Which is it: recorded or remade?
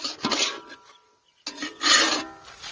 recorded